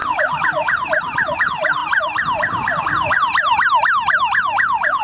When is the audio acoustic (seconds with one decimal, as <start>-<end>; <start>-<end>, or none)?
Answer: 1.4-1.8; 2.8-5.0